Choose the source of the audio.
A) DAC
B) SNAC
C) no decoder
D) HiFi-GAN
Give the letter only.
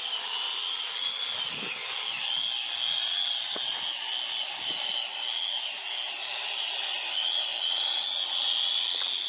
C